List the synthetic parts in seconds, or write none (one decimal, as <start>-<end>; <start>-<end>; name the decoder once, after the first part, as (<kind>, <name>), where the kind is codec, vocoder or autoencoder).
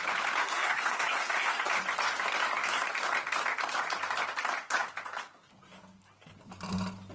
0.4-1.6 (codec, SNAC)